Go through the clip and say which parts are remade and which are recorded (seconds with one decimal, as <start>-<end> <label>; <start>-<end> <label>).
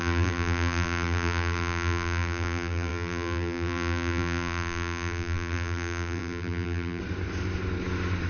0.0-7.0 remade; 7.0-8.3 recorded